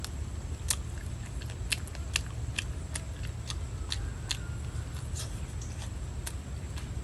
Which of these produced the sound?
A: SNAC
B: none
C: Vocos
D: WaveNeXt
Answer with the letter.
B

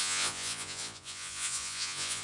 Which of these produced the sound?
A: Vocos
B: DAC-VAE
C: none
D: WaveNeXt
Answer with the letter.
A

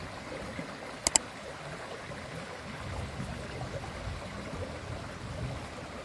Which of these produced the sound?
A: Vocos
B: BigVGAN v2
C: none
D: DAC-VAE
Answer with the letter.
C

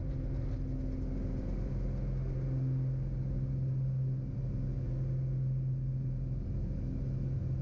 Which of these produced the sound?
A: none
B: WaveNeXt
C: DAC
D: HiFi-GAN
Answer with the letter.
A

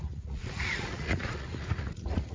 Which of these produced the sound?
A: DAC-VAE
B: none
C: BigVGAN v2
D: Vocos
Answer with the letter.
D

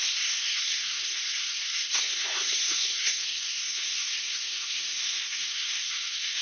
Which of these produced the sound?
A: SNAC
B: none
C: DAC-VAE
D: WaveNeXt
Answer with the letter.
A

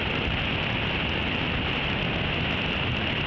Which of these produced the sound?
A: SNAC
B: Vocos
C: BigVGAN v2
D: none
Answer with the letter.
D